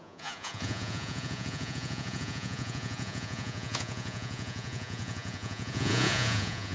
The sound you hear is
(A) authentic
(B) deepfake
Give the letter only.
B